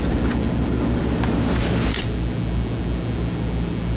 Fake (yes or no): no